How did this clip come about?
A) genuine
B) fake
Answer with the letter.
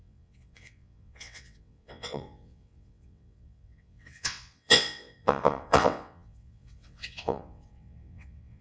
B